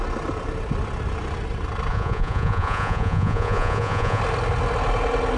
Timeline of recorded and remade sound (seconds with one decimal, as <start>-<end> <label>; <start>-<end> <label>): 0.0-1.9 recorded; 1.9-4.2 remade; 4.2-5.4 recorded